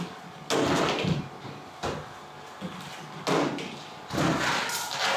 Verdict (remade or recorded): recorded